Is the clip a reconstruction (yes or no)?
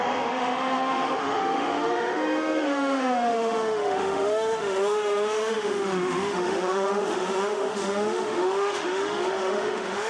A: yes